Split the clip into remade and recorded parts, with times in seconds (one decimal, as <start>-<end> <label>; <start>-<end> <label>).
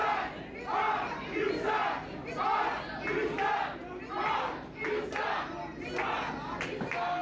0.0-7.2 recorded